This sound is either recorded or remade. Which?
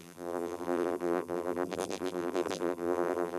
remade